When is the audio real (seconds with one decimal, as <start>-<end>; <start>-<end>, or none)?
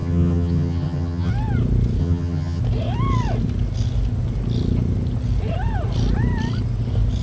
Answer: 1.3-2.0; 2.6-7.2